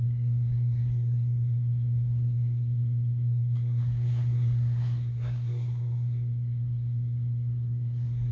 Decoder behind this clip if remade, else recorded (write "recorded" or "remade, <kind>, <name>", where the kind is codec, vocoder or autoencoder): remade, codec, SNAC